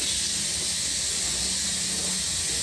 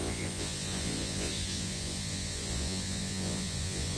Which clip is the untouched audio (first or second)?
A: first